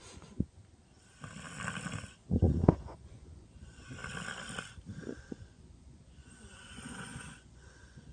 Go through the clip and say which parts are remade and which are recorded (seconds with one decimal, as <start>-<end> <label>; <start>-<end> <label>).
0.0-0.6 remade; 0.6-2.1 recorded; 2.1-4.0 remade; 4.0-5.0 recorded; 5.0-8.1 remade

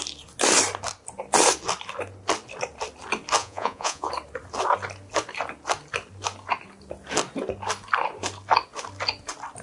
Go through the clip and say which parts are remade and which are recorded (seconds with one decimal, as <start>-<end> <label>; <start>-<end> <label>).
0.0-3.4 recorded; 3.4-4.1 remade; 4.1-9.6 recorded

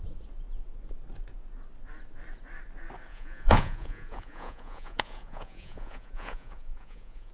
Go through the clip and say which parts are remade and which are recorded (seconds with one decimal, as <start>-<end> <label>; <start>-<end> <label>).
0.0-3.1 recorded; 3.1-7.3 remade

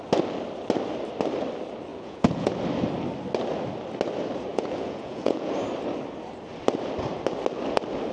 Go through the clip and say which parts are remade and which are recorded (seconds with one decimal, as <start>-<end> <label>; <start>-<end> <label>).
0.0-1.9 recorded; 1.9-2.5 remade; 2.5-4.5 recorded; 4.5-5.5 remade; 5.5-8.1 recorded

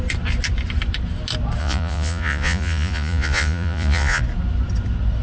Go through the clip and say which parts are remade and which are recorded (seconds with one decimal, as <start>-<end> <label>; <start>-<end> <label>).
0.0-1.6 recorded; 1.6-4.2 remade; 4.2-5.2 recorded

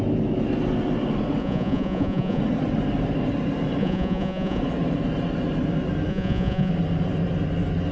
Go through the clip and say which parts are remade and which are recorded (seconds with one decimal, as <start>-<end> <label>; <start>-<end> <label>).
0.0-1.4 recorded; 1.4-2.4 remade; 2.4-3.8 recorded; 3.8-4.6 remade; 4.6-6.1 recorded; 6.1-6.7 remade; 6.7-7.9 recorded